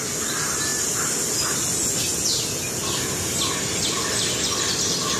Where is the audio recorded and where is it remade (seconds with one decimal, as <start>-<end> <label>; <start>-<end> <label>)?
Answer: 0.0-5.2 recorded